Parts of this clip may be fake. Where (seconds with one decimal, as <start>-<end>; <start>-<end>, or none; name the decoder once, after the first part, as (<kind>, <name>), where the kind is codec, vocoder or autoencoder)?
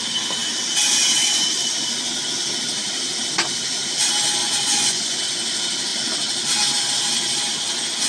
4.4-5.2 (vocoder, Vocos)